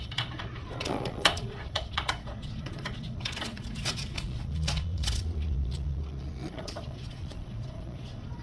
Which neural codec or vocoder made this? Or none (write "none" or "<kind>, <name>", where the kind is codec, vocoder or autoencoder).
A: vocoder, Vocos